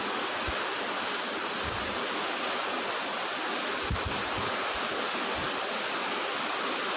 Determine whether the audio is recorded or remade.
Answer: recorded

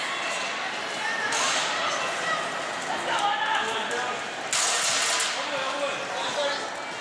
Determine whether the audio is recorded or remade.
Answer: recorded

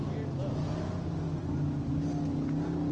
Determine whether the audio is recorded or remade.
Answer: recorded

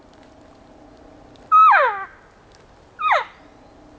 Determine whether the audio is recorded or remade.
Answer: recorded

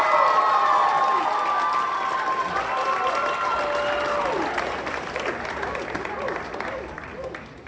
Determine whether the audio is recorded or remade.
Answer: recorded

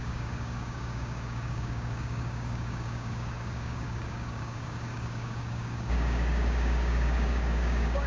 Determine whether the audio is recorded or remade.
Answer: remade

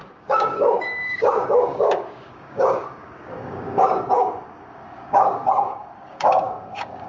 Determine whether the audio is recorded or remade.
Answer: remade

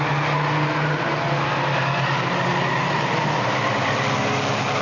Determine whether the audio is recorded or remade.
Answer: recorded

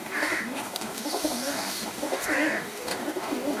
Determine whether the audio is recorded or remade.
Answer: remade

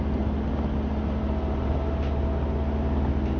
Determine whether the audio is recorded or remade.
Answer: recorded